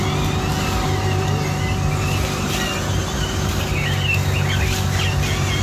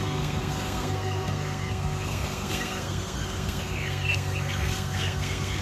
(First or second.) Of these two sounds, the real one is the first